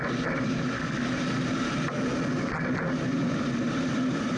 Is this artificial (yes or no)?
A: no